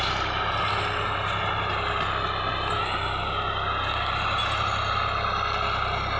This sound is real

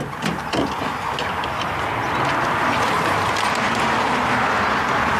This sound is real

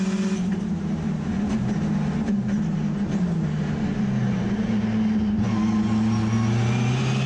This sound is real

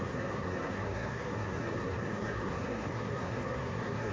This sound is fake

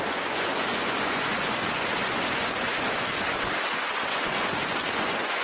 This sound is fake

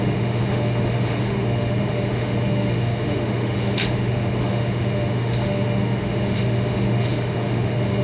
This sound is fake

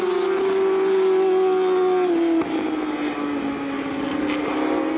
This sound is real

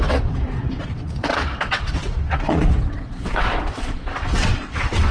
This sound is fake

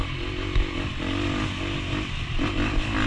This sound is real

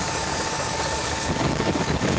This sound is fake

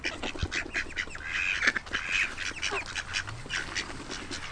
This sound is real